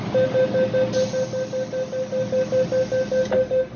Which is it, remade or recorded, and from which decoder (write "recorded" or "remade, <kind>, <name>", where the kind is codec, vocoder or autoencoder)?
recorded